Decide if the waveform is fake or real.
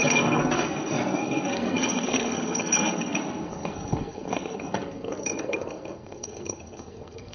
fake